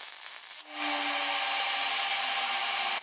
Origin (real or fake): real